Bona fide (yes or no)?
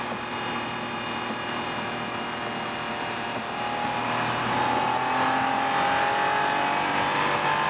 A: yes